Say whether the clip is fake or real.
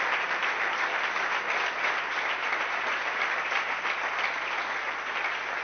real